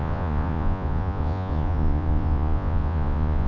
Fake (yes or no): yes